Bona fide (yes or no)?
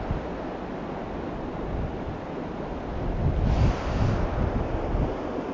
yes